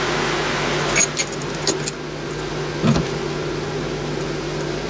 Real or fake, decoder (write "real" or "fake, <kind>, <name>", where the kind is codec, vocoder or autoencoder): real